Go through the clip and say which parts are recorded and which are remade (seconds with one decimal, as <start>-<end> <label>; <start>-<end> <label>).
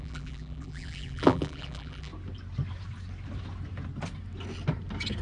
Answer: 0.0-2.1 remade; 2.1-5.2 recorded